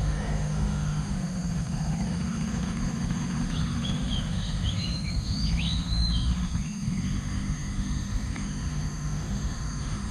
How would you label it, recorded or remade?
remade